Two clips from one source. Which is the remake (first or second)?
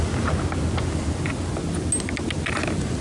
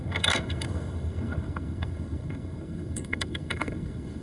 second